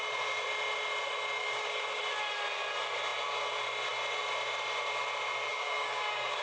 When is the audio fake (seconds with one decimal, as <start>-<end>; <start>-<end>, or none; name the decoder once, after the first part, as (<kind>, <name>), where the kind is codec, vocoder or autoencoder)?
1.4-2.0 (codec, DAC); 5.5-6.4